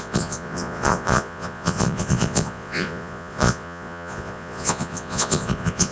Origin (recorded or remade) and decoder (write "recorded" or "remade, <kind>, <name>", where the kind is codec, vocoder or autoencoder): remade, vocoder, Vocos